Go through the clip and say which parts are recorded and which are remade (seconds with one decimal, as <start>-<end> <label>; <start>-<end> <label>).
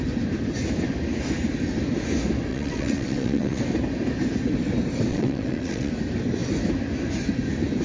0.0-2.5 recorded; 2.5-3.6 remade; 3.6-5.1 recorded; 5.1-5.9 remade; 5.9-7.8 recorded